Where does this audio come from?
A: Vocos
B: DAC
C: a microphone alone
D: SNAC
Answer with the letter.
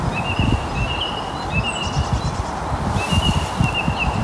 C